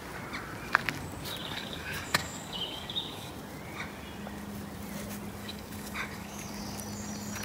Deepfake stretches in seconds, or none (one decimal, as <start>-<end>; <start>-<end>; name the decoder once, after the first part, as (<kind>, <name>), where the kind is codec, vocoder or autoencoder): 1.4-3.3 (codec, DAC); 5.4-6.6